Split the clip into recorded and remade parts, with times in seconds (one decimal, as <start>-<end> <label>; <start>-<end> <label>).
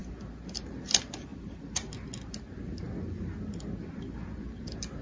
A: 0.0-5.0 recorded